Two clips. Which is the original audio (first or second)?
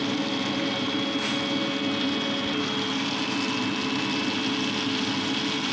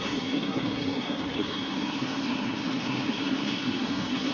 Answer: first